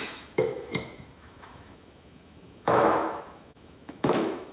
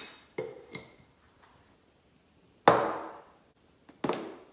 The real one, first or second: second